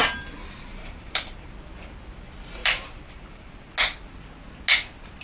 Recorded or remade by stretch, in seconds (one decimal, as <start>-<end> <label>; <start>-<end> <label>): 0.0-0.8 recorded; 0.8-1.5 remade; 1.5-2.6 recorded; 2.6-3.7 remade; 3.7-5.2 recorded